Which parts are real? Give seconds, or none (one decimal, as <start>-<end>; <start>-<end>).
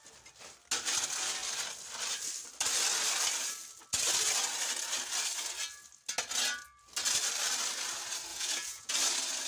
0.0-8.3; 8.9-9.5